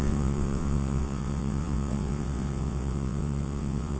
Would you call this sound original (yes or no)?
no